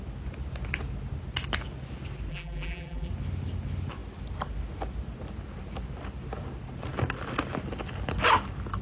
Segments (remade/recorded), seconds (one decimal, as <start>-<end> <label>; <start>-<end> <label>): 0.0-2.3 recorded; 2.3-3.1 remade; 3.1-8.8 recorded